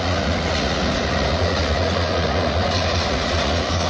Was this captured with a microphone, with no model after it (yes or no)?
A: no